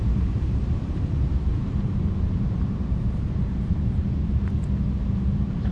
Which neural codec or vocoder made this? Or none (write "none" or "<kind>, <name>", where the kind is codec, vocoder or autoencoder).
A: vocoder, BigVGAN v2